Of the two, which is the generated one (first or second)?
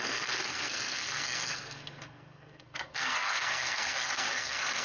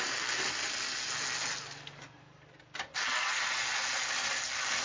first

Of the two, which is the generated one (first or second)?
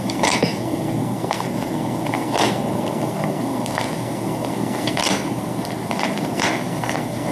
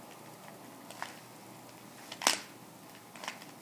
first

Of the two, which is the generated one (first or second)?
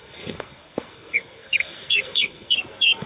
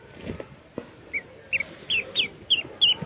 first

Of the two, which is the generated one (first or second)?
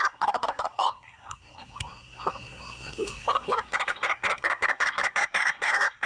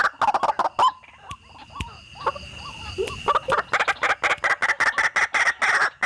first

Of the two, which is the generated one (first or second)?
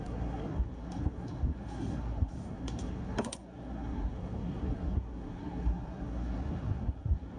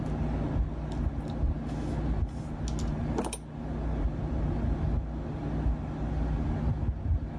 first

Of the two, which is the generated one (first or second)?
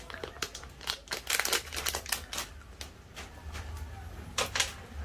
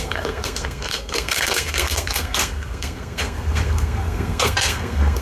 second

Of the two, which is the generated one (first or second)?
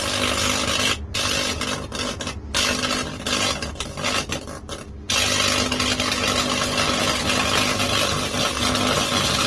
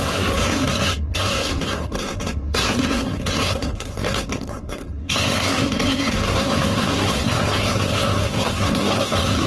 second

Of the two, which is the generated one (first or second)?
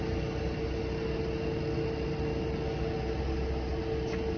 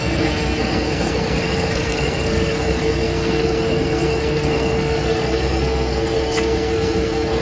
second